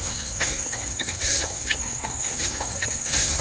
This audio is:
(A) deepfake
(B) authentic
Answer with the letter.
A